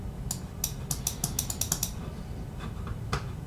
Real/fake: real